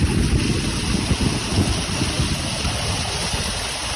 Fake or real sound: real